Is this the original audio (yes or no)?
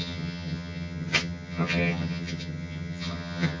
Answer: no